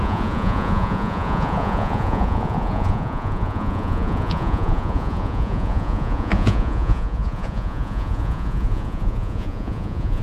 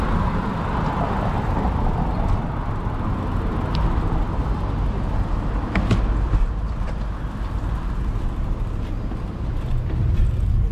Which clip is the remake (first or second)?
first